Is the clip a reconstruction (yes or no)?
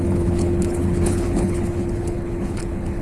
yes